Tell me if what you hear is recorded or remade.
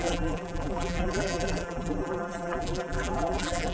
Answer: remade